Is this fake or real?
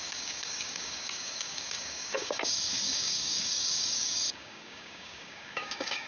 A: fake